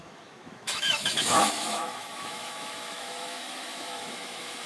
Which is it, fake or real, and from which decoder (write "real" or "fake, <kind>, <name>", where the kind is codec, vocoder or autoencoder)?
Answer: fake, autoencoder, DAC-VAE